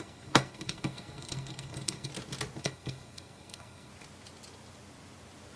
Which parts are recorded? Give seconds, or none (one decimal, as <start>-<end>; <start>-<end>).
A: 2.1-2.6; 3.9-5.6